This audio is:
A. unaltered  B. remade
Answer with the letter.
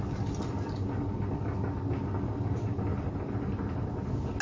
A